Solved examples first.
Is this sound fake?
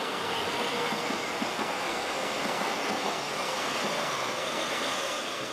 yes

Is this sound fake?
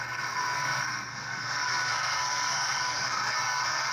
yes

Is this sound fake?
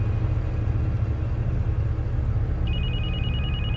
no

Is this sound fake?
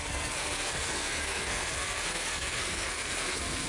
yes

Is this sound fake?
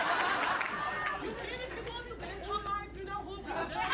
no